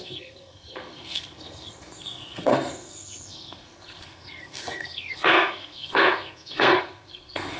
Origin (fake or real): fake